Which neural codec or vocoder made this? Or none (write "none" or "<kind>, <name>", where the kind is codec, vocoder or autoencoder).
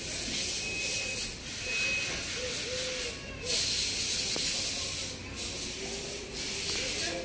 none